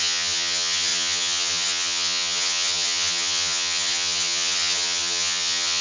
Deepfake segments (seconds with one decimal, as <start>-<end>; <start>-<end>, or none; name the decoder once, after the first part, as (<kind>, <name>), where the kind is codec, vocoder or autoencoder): 0.0-5.8 (vocoder, HiFi-GAN)